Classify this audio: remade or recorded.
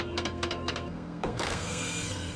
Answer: remade